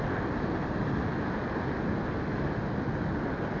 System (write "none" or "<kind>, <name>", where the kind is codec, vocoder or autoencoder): none